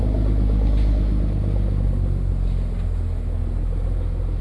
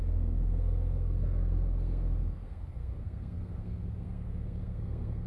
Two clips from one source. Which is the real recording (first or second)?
first